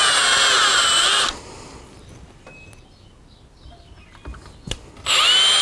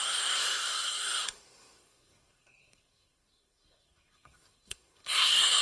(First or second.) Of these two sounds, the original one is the first